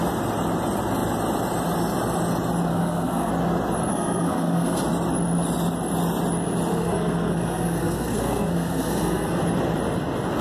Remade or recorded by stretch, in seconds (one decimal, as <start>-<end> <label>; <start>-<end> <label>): 0.0-2.7 recorded; 2.7-3.3 remade; 3.3-3.9 recorded; 3.9-4.8 remade; 4.8-6.7 recorded; 6.7-9.4 remade; 9.4-10.4 recorded